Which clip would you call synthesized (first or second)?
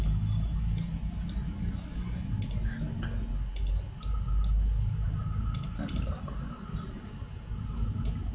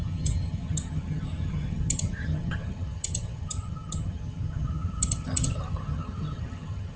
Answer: second